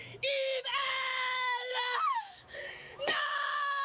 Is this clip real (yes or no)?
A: no